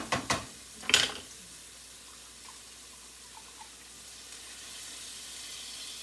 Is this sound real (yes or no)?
yes